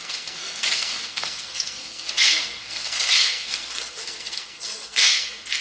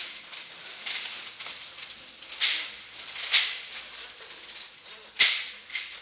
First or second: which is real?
second